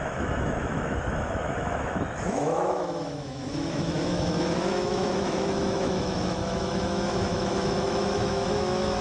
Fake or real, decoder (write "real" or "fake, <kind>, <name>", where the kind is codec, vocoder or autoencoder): fake, autoencoder, DAC-VAE